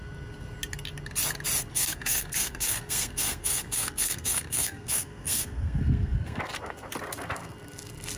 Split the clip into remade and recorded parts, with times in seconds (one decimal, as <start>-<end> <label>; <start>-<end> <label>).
0.0-1.7 recorded; 1.7-6.4 remade; 6.4-8.2 recorded